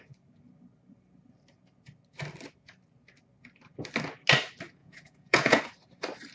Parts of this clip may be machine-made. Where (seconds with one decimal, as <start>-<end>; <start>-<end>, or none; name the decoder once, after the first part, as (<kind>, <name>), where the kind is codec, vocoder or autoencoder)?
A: 4.8-5.6 (vocoder, Vocos)